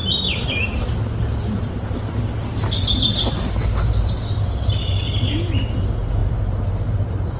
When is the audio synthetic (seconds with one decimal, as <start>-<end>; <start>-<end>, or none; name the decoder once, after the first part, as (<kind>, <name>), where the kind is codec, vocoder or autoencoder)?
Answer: 0.0-7.4 (vocoder, BigVGAN v2)